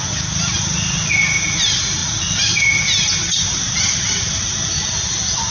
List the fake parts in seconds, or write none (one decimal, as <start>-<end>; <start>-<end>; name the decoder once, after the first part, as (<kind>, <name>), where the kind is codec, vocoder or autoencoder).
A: none